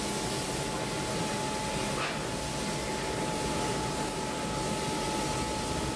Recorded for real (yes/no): yes